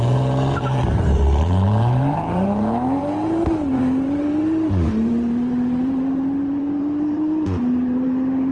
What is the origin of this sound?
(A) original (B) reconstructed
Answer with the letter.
B